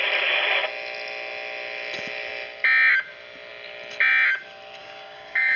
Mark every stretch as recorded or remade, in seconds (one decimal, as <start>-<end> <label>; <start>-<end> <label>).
0.0-4.8 recorded; 4.8-5.6 remade